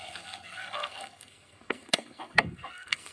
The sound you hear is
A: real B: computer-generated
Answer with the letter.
B